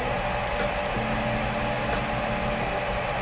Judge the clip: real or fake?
real